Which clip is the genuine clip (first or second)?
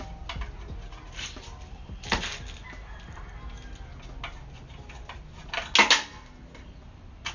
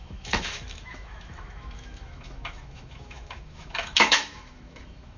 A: first